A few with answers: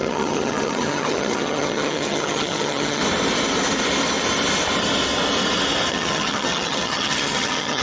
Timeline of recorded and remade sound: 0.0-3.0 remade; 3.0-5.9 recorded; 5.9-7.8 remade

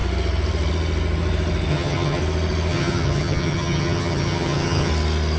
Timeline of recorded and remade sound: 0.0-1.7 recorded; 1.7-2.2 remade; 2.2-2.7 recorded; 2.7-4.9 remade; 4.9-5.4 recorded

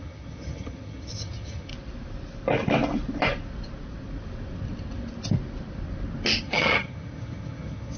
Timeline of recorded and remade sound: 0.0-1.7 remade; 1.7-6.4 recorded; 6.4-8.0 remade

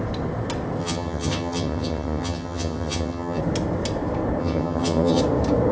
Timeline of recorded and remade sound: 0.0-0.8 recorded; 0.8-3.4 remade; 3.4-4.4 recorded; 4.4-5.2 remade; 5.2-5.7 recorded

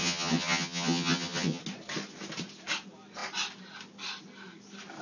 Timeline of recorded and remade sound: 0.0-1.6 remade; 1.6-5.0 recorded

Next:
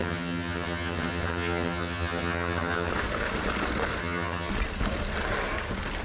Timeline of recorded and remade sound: 0.0-2.9 remade; 2.9-4.0 recorded; 4.0-4.5 remade; 4.5-6.0 recorded

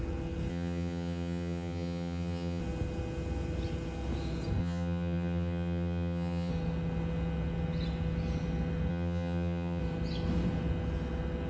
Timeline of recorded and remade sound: 0.0-0.5 recorded; 0.5-2.6 remade; 2.6-4.6 recorded; 4.6-6.5 remade; 6.5-8.9 recorded; 8.9-9.8 remade; 9.8-11.5 recorded